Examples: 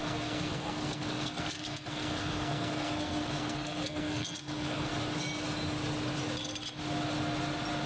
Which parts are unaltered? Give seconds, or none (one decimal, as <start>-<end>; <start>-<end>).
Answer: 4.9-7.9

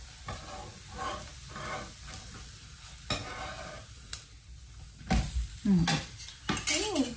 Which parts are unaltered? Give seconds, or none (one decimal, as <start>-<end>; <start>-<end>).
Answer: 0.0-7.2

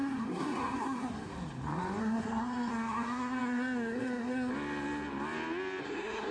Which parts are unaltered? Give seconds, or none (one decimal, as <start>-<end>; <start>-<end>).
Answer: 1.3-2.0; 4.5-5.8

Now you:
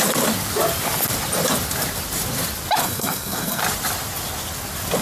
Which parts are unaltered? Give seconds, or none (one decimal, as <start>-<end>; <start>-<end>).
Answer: 0.0-2.8; 3.6-5.0

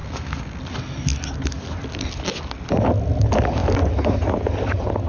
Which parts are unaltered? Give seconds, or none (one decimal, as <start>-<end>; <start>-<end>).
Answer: 0.6-5.1

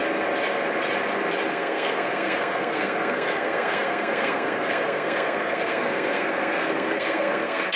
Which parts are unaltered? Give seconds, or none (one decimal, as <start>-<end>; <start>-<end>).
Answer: 0.0-1.5

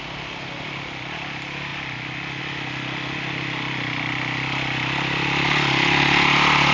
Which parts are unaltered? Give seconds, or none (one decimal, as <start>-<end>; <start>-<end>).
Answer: 0.0-6.7

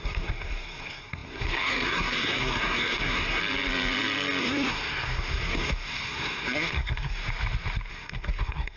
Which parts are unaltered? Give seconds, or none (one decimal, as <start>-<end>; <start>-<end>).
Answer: 3.4-4.4; 7.2-7.9